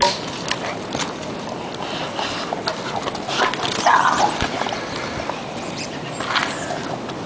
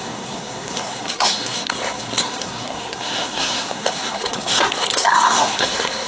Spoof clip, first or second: second